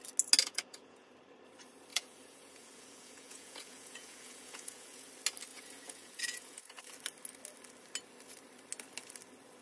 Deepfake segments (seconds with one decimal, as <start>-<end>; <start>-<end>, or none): 0.4-1.1; 1.9-5.1; 5.5-6.8